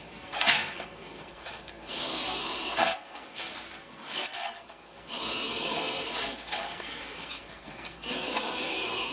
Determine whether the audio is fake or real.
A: fake